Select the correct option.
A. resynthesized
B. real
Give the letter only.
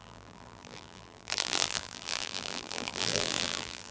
A